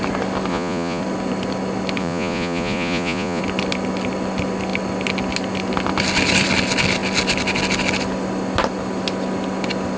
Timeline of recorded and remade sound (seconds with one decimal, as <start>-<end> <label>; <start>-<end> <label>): 0.0-0.5 recorded; 0.5-1.0 remade; 1.0-2.0 recorded; 2.0-3.4 remade; 3.4-10.0 recorded